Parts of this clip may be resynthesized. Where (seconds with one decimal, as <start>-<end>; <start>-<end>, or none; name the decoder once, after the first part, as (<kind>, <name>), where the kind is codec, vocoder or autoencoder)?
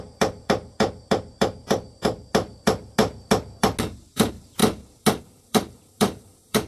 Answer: 0.0-2.3 (vocoder, BigVGAN v2); 4.0-4.6; 5.2-6.7